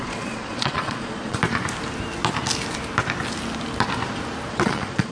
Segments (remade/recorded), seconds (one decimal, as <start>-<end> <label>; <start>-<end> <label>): 0.0-1.4 remade; 1.4-4.5 recorded; 4.5-5.1 remade